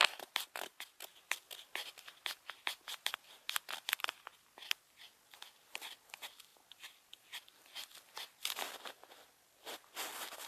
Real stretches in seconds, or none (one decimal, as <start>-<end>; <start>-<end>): 0.0-6.5; 9.9-10.5